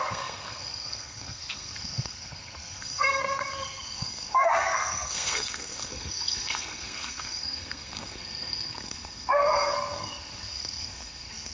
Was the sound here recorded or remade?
remade